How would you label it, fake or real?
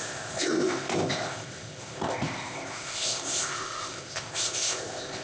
fake